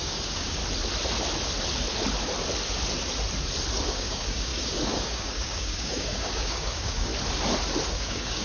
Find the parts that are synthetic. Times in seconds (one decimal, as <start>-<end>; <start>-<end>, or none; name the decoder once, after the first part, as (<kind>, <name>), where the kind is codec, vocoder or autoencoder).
0.0-0.6 (codec, DAC); 3.9-7.1; 7.9-8.4